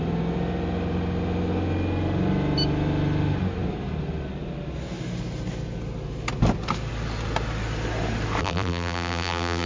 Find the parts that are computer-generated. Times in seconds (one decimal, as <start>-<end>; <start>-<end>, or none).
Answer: 8.4-9.7